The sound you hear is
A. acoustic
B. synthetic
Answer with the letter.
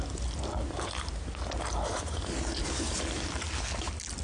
A